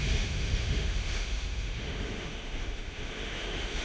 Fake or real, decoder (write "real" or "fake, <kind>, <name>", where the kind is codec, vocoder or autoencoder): fake, autoencoder, DAC-VAE